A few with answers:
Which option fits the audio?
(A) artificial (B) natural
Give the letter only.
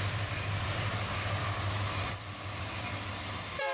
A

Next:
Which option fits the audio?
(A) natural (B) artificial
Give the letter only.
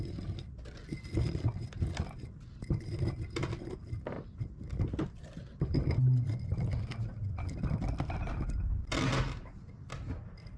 A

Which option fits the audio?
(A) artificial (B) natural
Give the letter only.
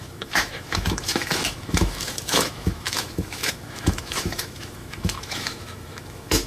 A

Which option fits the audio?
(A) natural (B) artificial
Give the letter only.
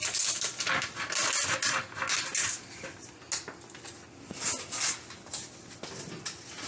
A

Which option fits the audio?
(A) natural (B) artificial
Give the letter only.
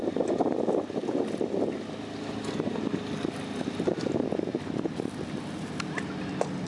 A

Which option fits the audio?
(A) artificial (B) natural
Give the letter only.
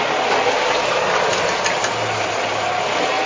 B